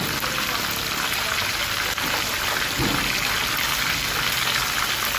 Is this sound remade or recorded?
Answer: recorded